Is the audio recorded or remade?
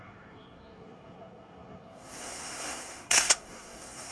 remade